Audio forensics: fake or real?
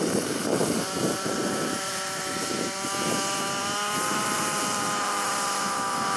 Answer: fake